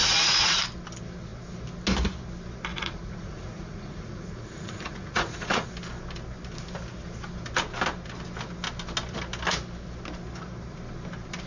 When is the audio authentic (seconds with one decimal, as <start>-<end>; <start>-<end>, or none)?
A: 0.6-2.7; 5.7-11.5

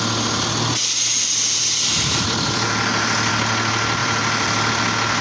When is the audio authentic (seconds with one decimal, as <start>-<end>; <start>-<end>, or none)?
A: 0.0-1.0; 3.3-4.0; 4.7-5.2